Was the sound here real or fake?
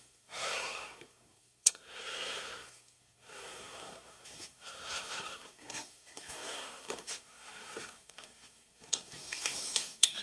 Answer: fake